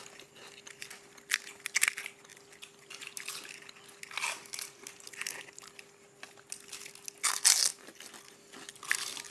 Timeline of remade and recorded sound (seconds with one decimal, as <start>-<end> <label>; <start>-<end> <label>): 0.0-9.3 recorded